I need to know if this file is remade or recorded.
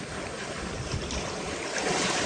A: remade